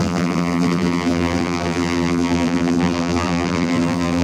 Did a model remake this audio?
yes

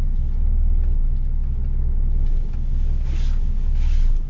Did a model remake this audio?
no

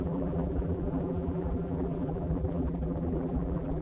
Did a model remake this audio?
yes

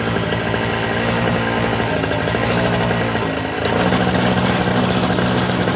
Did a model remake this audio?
no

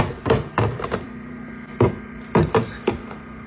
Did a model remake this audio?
yes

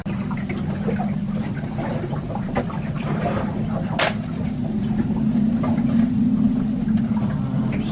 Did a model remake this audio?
no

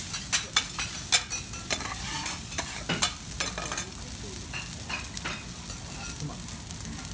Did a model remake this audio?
no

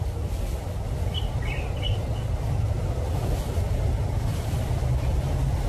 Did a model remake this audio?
yes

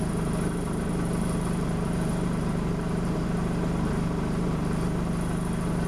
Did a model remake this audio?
yes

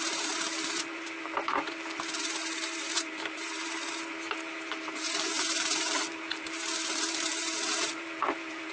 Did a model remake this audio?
yes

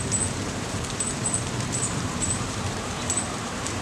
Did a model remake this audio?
yes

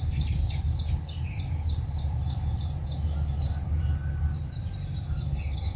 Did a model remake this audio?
yes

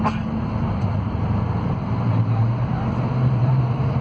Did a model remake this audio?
yes